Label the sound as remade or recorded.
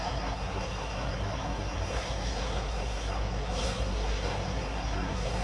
remade